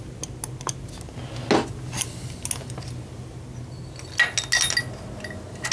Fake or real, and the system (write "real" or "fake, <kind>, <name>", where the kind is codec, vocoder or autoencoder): real